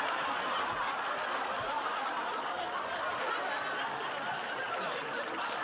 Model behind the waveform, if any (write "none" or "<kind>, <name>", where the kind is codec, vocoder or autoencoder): none